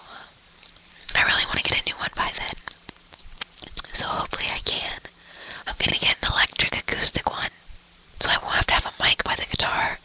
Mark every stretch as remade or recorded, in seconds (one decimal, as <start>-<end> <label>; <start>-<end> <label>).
0.0-5.9 remade; 5.9-7.6 recorded; 7.6-8.4 remade; 8.4-9.2 recorded; 9.2-10.0 remade